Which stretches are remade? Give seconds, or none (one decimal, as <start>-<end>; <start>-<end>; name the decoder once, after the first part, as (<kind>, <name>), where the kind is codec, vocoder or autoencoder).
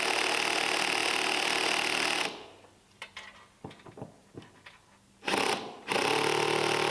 none